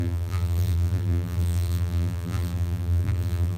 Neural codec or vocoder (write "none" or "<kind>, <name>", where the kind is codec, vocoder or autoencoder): vocoder, BigVGAN v2